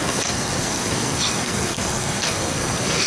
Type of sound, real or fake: fake